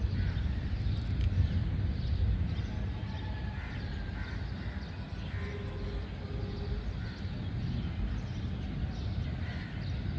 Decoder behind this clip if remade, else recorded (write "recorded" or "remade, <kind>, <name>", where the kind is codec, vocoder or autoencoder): recorded